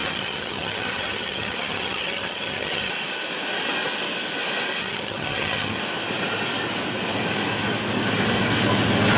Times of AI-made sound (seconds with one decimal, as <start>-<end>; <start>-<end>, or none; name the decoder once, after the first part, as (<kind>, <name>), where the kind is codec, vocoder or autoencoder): 0.0-2.9 (vocoder, HiFi-GAN); 4.8-5.8